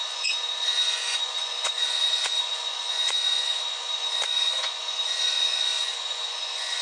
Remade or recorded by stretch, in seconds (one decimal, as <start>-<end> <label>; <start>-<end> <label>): 0.0-6.8 remade